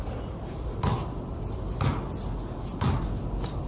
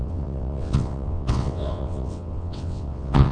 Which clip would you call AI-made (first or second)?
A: second